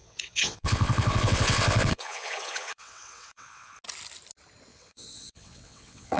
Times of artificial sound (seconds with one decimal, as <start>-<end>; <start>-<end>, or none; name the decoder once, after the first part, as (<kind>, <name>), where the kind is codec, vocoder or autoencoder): 0.0-3.7 (vocoder, WaveNeXt); 4.7-6.2

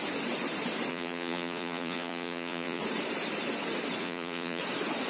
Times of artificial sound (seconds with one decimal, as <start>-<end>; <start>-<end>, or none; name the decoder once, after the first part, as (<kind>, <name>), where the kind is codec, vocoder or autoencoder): 0.9-2.8 (vocoder, Vocos); 4.0-4.6

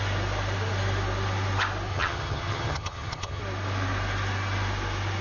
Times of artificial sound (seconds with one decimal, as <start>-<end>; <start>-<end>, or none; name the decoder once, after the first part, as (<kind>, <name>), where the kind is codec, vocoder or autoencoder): 1.9-3.4 (vocoder, HiFi-GAN)